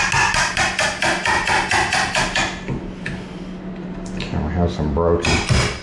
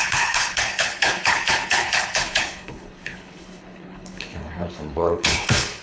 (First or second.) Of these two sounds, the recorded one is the first